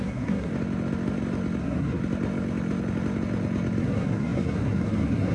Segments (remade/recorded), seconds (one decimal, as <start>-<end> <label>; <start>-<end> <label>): 0.0-0.5 remade; 0.5-1.6 recorded; 1.6-2.0 remade; 2.0-3.8 recorded; 3.8-5.3 remade